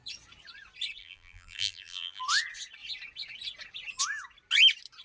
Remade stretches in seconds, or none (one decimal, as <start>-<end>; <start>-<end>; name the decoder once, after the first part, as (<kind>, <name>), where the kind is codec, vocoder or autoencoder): 1.0-2.2 (vocoder, BigVGAN v2)